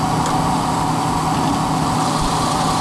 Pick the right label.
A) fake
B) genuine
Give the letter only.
A